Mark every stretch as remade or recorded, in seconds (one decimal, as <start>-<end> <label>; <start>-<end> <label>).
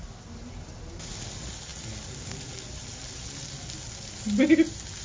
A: 0.0-5.0 recorded